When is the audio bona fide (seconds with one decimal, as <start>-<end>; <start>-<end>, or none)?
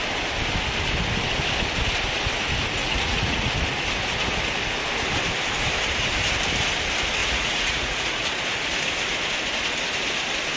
0.0-2.8; 3.5-7.2; 8.4-10.6